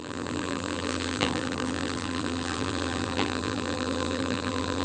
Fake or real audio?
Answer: fake